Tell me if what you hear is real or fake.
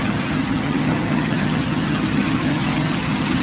fake